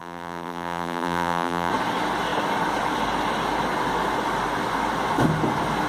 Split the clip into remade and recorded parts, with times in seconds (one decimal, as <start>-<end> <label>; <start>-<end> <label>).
0.0-1.7 remade; 1.7-5.9 recorded